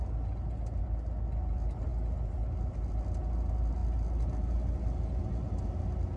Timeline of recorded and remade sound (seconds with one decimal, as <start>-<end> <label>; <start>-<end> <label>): 0.0-6.2 recorded